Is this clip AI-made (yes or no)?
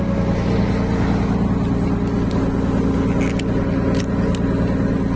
no